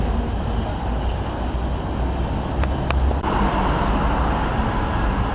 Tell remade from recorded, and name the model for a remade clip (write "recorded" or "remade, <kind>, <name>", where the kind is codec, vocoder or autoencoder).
recorded